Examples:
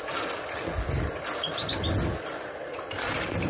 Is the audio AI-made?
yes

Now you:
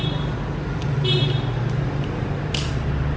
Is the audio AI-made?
no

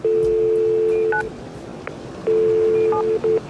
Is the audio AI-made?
no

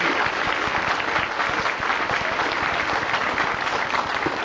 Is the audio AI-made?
no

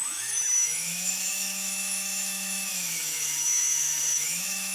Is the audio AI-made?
yes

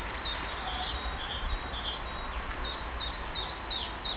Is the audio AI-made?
no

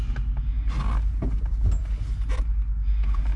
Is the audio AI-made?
no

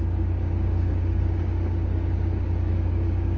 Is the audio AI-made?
yes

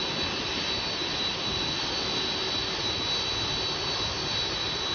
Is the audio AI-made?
no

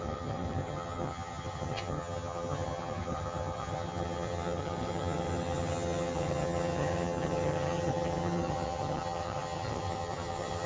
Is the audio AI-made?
yes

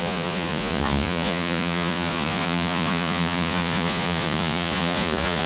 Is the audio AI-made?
yes